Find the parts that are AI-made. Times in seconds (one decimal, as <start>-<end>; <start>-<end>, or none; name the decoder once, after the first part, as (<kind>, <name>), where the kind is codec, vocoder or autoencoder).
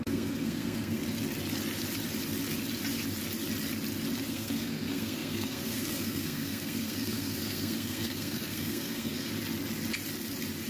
0.0-1.0 (codec, SNAC); 4.3-9.3